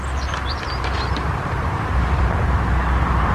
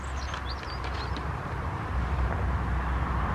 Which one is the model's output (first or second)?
first